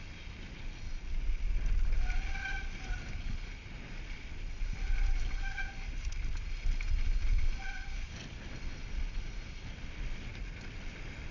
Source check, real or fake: real